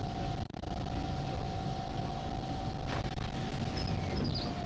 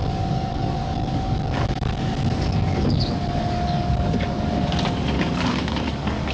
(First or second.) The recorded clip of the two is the first